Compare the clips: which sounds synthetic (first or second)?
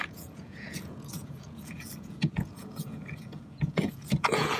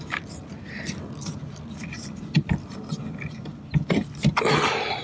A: first